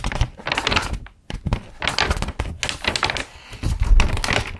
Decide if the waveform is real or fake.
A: real